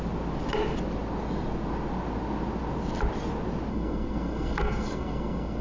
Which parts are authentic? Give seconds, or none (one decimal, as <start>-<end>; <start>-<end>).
0.0-3.7